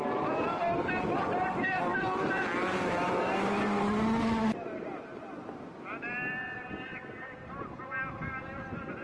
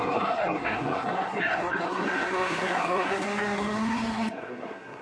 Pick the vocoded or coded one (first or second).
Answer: second